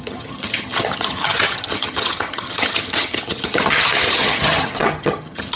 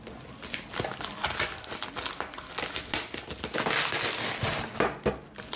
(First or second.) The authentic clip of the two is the second